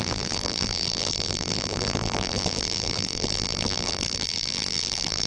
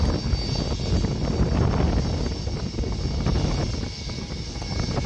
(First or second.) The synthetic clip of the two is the first